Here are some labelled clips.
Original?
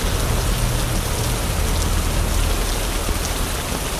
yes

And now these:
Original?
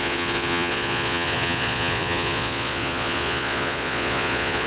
no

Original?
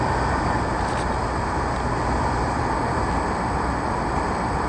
yes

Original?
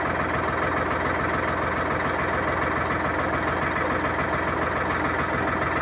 yes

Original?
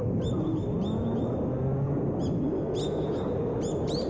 yes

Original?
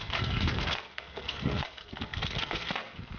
no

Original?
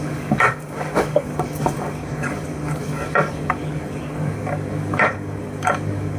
no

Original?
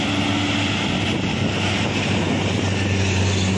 yes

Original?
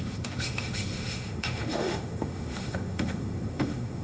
no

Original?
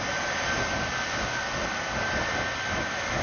yes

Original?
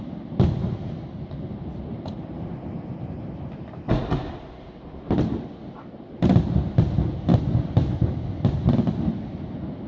yes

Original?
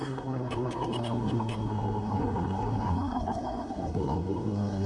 no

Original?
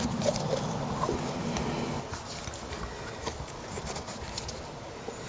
yes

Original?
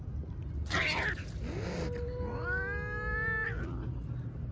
yes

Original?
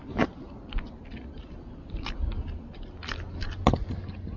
yes